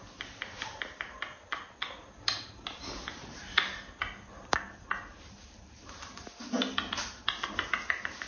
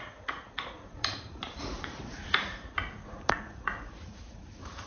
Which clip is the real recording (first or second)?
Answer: first